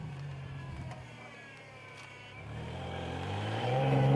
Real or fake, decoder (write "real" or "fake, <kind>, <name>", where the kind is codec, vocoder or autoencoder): fake, vocoder, BigVGAN v2